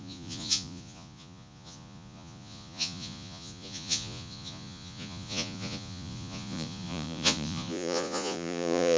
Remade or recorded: remade